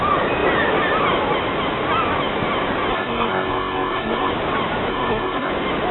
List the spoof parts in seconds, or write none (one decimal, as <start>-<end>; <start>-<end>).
2.9-4.3; 4.9-5.5